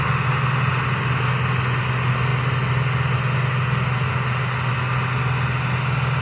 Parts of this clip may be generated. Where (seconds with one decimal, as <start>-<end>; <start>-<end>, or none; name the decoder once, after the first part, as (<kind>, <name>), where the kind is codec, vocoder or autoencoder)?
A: none